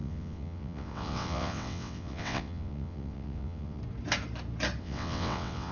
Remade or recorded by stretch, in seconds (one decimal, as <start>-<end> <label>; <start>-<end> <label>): 0.0-3.8 remade; 3.8-4.8 recorded; 4.8-5.7 remade